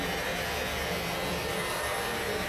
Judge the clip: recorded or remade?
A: recorded